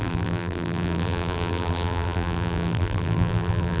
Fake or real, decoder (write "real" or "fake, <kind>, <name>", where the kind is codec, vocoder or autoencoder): fake, vocoder, BigVGAN v2